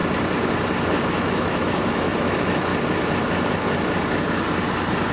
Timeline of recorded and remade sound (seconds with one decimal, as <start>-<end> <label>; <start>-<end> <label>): 0.0-1.1 recorded; 1.1-2.7 remade; 2.7-5.1 recorded